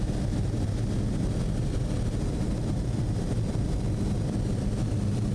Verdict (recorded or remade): recorded